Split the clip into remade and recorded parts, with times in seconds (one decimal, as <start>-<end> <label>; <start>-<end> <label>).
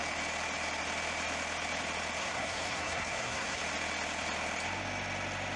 0.0-2.2 recorded; 2.2-3.6 remade; 3.6-5.6 recorded